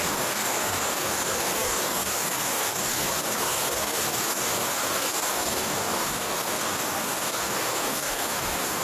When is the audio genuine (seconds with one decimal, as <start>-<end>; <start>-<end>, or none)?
none